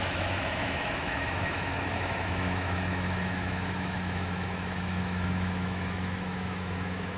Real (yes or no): no